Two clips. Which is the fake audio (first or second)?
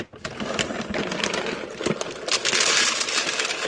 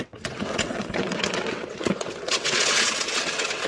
second